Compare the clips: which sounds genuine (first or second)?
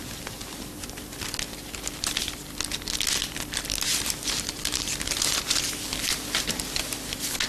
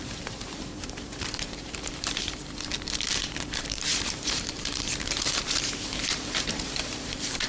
first